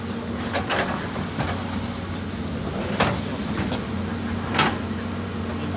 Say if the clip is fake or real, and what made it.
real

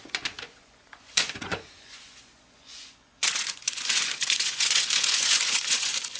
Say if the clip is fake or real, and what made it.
fake, vocoder, Vocos